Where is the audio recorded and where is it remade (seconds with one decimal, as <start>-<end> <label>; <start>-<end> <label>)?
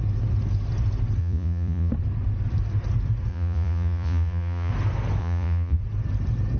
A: 0.0-1.2 recorded; 1.2-1.9 remade; 1.9-3.3 recorded; 3.3-4.7 remade; 4.7-5.2 recorded; 5.2-5.8 remade; 5.8-6.6 recorded